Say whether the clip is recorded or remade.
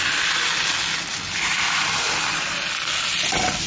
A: recorded